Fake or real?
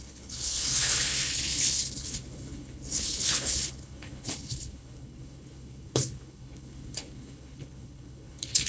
fake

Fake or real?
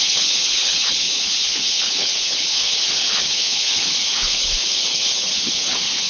fake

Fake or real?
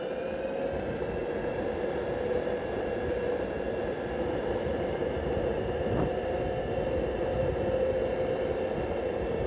real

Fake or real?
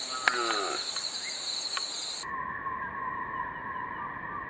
real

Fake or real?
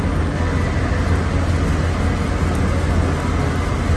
real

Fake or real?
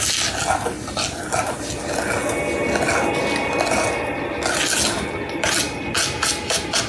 real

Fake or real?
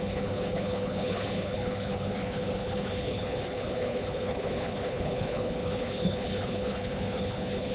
fake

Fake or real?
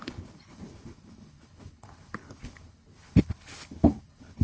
fake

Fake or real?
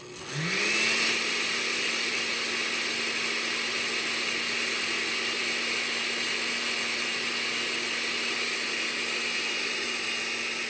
real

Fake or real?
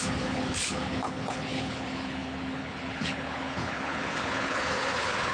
fake